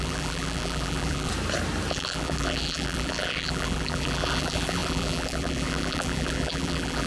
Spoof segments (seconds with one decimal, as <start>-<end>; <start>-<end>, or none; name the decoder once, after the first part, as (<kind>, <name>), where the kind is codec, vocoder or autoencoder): 0.0-1.3 (vocoder, BigVGAN v2); 1.9-7.1